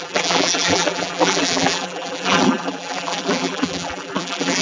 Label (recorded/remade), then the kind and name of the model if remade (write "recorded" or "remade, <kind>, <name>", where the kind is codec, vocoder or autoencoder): remade, vocoder, BigVGAN v2